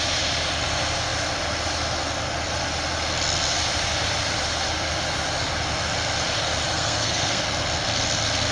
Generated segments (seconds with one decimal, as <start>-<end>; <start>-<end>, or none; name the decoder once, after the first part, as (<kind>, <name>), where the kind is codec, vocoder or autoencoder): 6.7-7.4 (codec, SNAC)